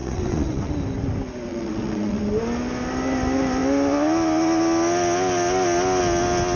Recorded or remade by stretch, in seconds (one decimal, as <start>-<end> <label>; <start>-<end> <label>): 0.0-0.7 remade; 0.7-1.5 recorded; 1.5-2.2 remade; 2.2-6.6 recorded

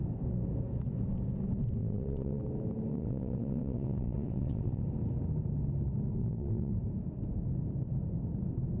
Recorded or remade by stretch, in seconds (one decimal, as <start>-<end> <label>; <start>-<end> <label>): 0.0-1.8 recorded; 1.8-2.4 remade; 2.4-2.9 recorded; 2.9-4.8 remade; 4.8-6.2 recorded; 6.2-6.7 remade; 6.7-8.8 recorded

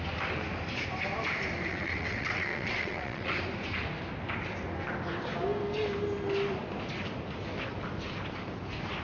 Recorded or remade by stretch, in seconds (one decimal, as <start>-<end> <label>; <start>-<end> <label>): 0.0-1.7 recorded; 1.7-3.3 remade; 3.3-9.0 recorded

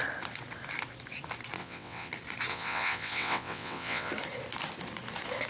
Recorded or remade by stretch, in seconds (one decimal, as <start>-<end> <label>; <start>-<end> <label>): 0.0-1.6 recorded; 1.6-2.1 remade; 2.1-2.5 recorded; 2.5-4.1 remade; 4.1-5.5 recorded

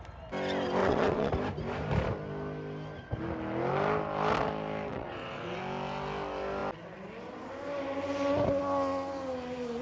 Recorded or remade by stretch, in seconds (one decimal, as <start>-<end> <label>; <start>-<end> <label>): 0.0-0.8 recorded; 0.8-1.3 remade; 1.3-4.9 recorded; 4.9-5.6 remade; 5.6-9.8 recorded